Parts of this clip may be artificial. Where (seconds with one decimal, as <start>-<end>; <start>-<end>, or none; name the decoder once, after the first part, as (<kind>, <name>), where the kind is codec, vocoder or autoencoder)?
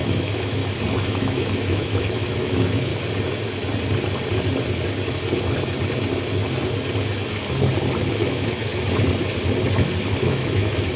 0.0-0.6 (autoencoder, DAC-VAE); 1.1-2.9; 8.1-8.7; 10.2-11.0